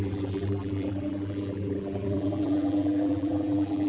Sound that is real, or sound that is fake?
fake